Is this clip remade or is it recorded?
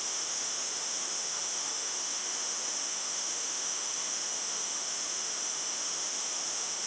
remade